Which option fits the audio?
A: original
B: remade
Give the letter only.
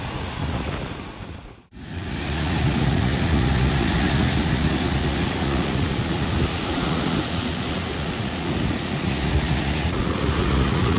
B